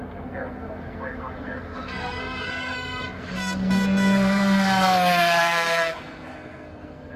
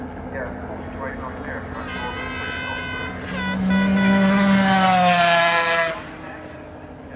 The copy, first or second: first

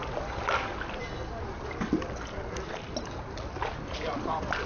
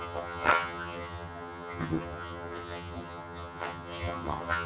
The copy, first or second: second